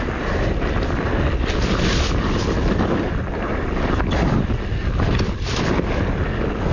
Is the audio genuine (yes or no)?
yes